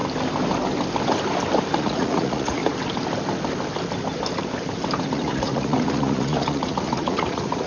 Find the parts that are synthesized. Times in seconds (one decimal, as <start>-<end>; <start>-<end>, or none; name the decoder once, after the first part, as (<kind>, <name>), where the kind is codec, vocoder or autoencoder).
1.8-2.6 (vocoder, Vocos); 5.0-7.7